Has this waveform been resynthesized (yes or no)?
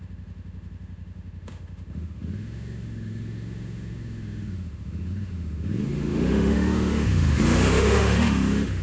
yes